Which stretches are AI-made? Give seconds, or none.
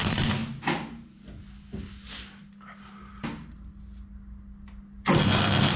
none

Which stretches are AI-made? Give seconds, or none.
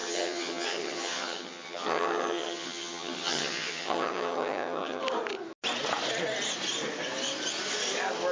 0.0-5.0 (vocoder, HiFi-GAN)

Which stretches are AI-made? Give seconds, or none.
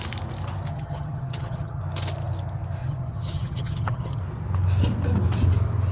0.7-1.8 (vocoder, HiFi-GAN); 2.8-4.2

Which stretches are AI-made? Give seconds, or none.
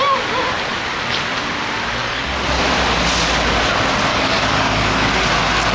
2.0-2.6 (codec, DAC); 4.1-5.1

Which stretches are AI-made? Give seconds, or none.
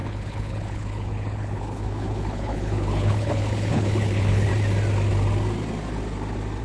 0.0-4.5 (codec, HILCodec)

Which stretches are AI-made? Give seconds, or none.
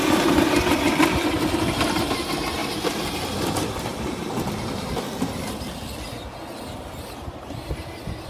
0.9-1.6 (vocoder, BigVGAN v2); 2.6-5.6